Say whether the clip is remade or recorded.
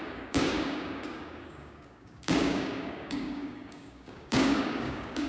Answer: remade